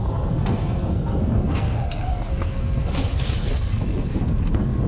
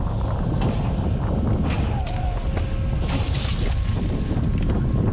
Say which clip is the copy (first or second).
first